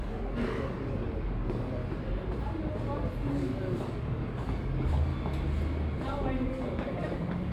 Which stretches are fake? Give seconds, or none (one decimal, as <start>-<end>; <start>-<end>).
0.0-1.8; 3.3-5.1; 6.5-7.5